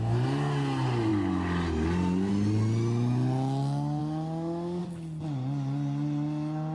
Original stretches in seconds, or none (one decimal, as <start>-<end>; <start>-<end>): 0.0-6.7